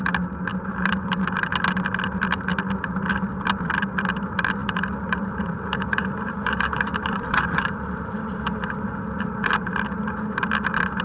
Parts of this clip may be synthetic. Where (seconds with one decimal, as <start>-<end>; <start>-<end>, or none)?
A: 0.5-1.2; 4.6-8.1